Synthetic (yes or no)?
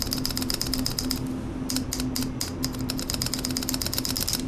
no